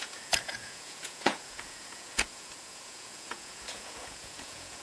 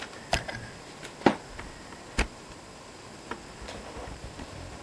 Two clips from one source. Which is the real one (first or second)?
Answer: second